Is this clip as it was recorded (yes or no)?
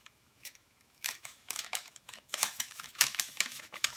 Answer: no